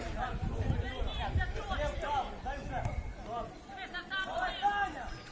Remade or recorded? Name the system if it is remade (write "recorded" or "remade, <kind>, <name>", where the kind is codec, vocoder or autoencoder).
remade, vocoder, BigVGAN v2